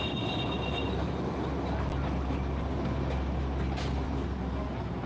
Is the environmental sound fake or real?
real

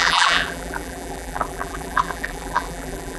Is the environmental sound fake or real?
fake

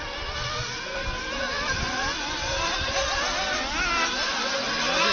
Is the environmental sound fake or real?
real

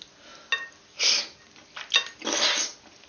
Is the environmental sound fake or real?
real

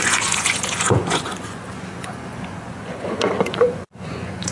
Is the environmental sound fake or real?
fake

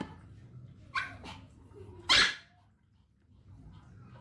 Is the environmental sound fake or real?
real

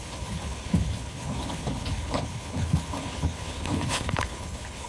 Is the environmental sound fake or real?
fake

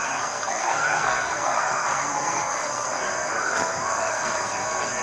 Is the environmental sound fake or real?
fake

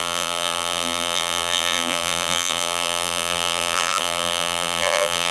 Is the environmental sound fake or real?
fake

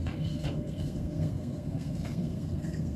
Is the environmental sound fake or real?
fake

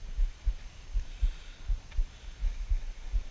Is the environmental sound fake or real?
real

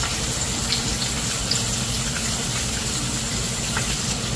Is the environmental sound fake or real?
fake